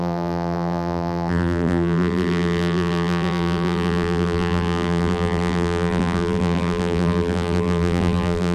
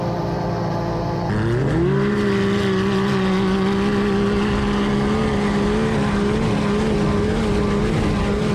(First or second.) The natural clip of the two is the second